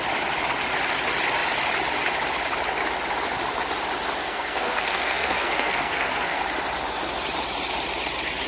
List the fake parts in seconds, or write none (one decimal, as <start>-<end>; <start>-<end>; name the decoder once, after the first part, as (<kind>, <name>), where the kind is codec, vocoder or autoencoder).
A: 4.2-6.4 (codec, SNAC)